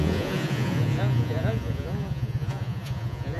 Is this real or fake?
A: fake